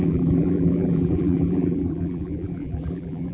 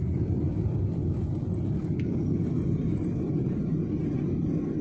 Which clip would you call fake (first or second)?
first